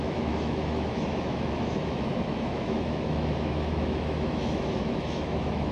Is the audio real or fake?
fake